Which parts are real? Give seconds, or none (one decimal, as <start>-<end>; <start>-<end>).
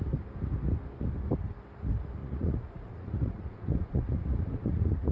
0.0-2.2